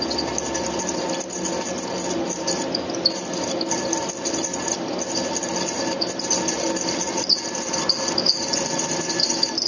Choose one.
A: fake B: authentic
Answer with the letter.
B